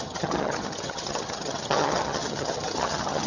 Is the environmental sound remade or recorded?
remade